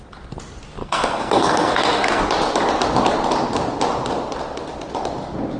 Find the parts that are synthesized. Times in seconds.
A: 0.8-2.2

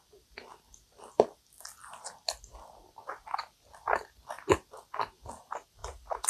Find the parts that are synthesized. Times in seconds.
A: none

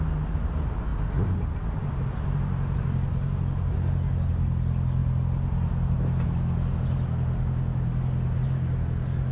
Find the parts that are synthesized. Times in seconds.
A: none

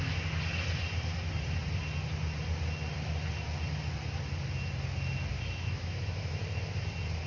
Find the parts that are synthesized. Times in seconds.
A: 5.3-6.4

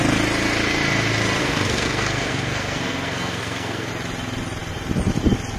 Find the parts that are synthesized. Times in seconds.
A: 1.4-3.9